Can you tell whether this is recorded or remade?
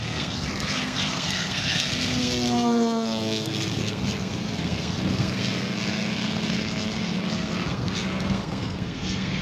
remade